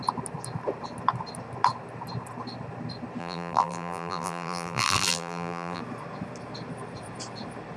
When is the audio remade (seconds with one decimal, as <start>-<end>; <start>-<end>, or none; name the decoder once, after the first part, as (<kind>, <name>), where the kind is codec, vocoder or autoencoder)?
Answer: 3.2-5.8 (vocoder, BigVGAN v2)